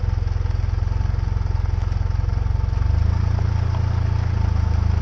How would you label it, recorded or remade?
recorded